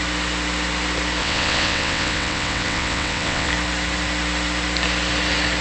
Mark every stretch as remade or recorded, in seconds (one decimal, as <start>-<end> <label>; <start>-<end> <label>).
0.0-1.2 recorded; 1.2-3.5 remade; 3.5-5.6 recorded